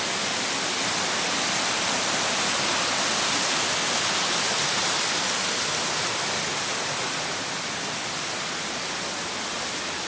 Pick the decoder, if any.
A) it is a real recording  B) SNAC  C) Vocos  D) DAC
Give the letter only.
A